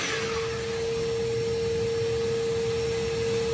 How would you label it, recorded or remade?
recorded